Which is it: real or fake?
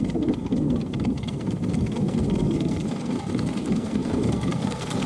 fake